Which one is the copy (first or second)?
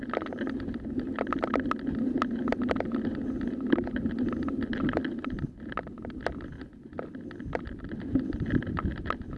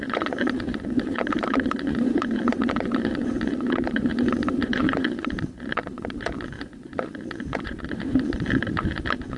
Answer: second